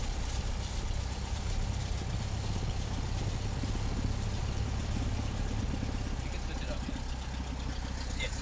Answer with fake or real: real